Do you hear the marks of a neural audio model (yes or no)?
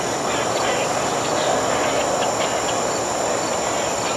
no